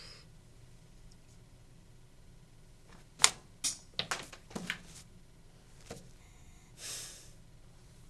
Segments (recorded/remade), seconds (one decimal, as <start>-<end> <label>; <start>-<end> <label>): 0.0-6.2 recorded; 6.2-6.7 remade; 6.7-8.1 recorded